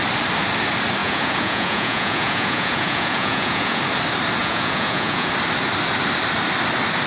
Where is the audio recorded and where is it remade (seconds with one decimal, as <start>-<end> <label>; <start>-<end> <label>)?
0.0-1.0 recorded; 1.0-3.8 remade; 3.8-4.4 recorded; 4.4-5.3 remade; 5.3-7.1 recorded